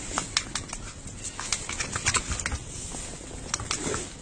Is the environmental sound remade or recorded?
recorded